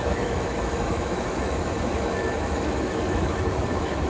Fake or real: fake